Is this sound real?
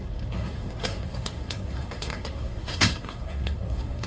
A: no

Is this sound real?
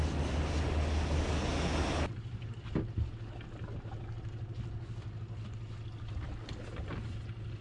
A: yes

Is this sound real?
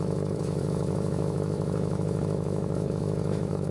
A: no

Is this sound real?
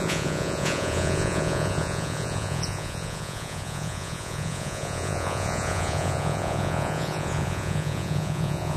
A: no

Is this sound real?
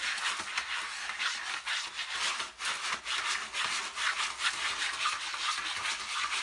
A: yes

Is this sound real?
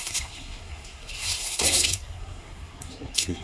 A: no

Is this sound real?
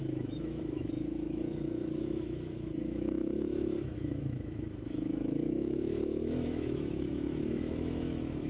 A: no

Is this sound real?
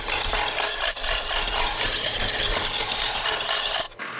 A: yes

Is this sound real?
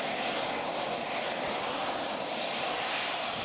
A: yes